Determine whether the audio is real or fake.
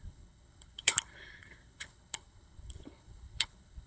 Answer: fake